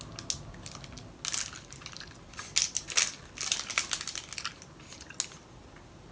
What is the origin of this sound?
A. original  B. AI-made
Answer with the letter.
A